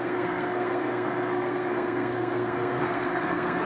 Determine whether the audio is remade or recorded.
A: remade